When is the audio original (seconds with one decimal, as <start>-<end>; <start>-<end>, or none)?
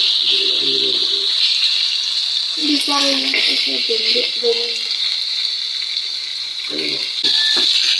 0.0-6.3; 6.9-8.0